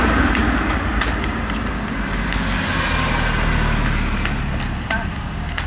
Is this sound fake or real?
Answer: real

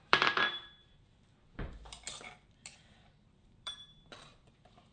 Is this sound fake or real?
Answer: fake